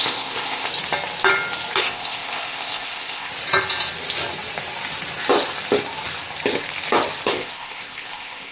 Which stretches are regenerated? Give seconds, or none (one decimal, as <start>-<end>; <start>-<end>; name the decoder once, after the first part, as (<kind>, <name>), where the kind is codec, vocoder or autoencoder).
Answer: 0.0-0.7 (codec, ZipCodec); 1.8-3.3; 7.3-8.5